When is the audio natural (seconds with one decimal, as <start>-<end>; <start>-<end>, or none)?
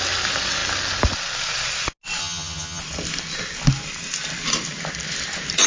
0.0-2.2; 2.8-5.7